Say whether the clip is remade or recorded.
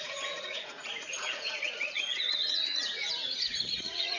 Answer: remade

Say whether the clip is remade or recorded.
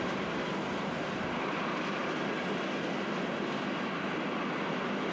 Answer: recorded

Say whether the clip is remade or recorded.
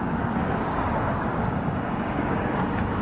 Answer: remade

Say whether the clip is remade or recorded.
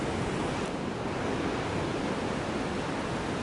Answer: recorded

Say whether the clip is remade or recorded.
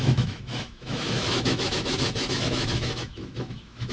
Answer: remade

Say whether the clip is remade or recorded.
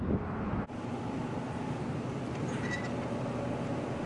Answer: recorded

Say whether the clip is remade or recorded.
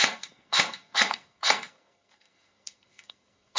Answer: remade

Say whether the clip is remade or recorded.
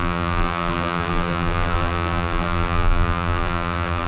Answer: remade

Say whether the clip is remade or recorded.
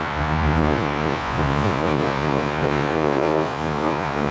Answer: remade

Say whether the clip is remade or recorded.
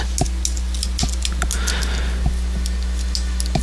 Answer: recorded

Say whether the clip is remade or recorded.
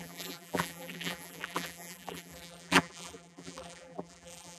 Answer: remade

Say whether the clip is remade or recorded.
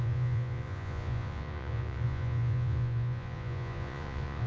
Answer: remade